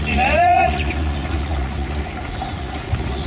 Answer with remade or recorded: remade